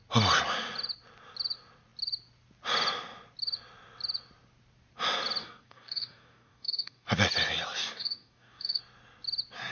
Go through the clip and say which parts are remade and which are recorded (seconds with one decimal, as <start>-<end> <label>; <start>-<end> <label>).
0.0-5.4 recorded; 5.4-7.1 remade; 7.1-7.8 recorded; 7.8-8.8 remade; 8.8-9.7 recorded